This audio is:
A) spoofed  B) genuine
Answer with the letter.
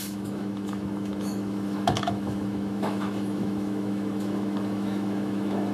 A